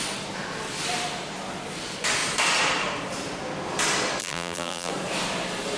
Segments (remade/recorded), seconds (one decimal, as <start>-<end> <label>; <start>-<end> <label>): 0.0-4.2 recorded; 4.2-4.9 remade; 4.9-5.8 recorded